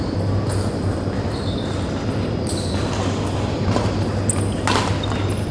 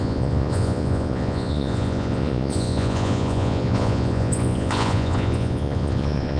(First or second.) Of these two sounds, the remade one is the second